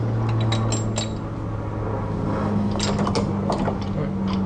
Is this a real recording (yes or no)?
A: yes